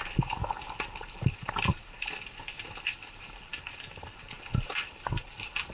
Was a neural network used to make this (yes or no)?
no